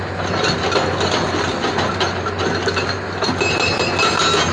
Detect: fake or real real